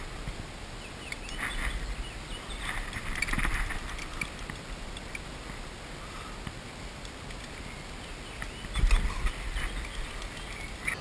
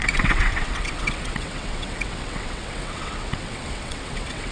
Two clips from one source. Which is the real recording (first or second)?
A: first